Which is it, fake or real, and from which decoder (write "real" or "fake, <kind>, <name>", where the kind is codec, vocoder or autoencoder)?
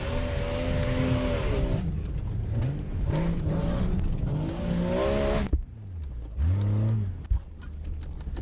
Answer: real